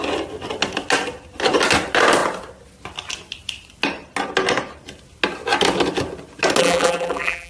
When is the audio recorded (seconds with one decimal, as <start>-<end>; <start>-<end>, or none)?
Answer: 0.0-6.6